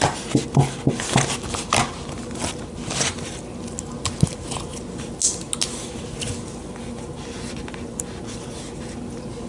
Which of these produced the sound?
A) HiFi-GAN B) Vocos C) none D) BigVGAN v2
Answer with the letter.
C